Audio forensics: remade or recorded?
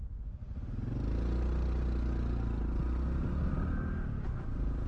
recorded